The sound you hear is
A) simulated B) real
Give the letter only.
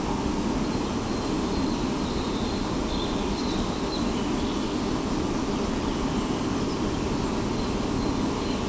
B